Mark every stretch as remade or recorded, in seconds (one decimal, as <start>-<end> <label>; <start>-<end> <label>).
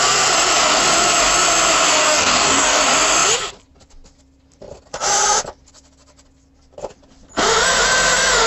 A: 0.0-2.0 recorded; 2.0-2.8 remade; 2.8-8.5 recorded